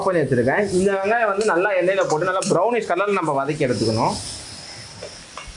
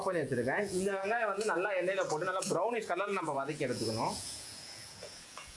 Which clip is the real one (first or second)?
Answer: first